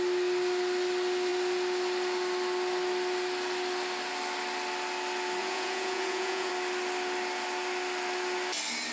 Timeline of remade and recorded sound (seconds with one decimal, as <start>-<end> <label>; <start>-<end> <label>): 0.0-5.4 recorded; 5.4-6.5 remade; 6.5-8.9 recorded